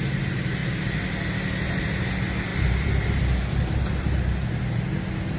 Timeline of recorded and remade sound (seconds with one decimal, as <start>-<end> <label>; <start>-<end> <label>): 0.0-5.4 recorded